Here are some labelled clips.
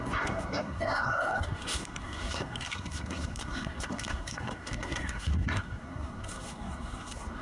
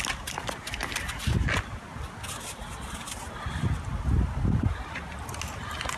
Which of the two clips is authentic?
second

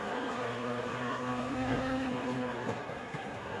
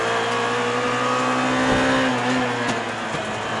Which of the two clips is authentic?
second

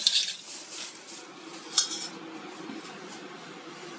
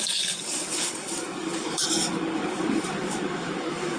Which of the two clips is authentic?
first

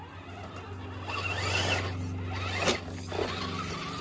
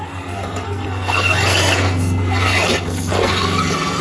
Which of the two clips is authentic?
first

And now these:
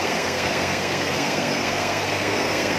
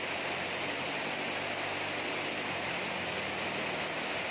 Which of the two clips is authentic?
second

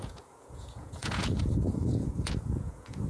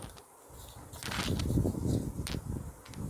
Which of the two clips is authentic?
second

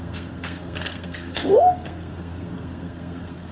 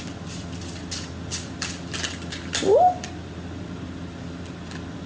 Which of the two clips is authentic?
second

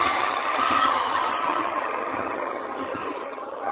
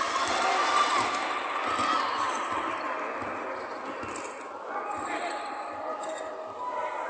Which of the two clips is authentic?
second